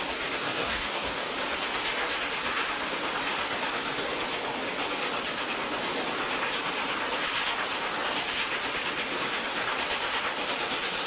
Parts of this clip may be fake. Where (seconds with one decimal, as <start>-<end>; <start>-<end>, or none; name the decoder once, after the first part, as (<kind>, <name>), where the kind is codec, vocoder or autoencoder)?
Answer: 0.4-1.3 (codec, DAC)

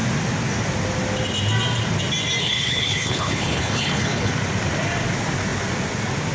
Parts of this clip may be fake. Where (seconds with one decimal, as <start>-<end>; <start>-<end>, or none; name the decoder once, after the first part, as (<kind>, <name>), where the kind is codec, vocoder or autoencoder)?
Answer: 2.4-4.3 (codec, HILCodec)

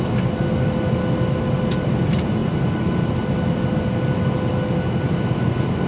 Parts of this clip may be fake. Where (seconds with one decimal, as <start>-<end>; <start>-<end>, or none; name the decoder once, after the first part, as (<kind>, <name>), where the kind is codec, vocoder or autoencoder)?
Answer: none

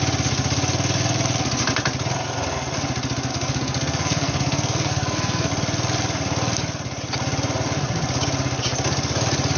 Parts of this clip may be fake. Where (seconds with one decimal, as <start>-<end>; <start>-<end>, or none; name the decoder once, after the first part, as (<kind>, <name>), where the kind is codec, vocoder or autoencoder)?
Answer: 3.3-5.5 (codec, SNAC)